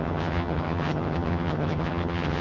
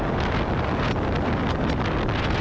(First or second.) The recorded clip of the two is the second